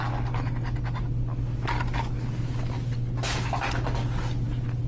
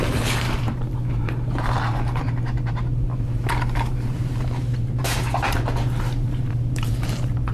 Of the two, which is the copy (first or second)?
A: second